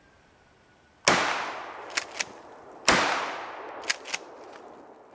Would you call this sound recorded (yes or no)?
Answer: yes